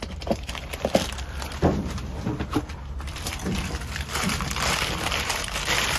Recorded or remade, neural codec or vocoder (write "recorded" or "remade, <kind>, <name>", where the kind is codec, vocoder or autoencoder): remade, vocoder, BigVGAN v2